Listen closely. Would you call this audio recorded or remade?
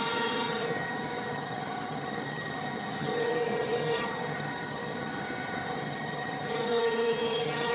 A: remade